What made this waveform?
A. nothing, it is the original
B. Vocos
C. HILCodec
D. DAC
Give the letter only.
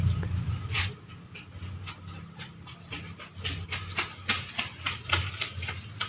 A